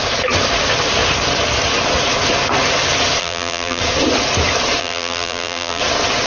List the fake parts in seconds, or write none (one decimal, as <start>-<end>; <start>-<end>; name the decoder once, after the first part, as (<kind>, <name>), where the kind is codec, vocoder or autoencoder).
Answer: 3.2-3.8 (vocoder, BigVGAN v2); 4.8-5.8